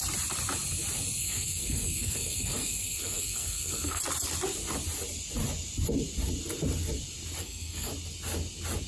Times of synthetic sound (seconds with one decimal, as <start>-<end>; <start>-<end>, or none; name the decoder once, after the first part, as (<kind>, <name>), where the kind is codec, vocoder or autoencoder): 1.2-4.0 (codec, SNAC); 7.4-7.9